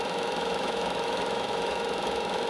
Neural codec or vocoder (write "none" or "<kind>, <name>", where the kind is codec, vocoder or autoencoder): autoencoder, DAC-VAE